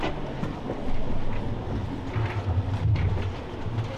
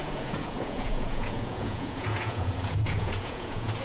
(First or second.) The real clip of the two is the first